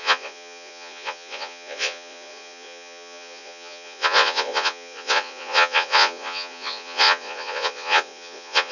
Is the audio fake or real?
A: fake